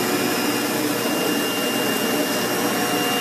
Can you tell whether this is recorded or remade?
recorded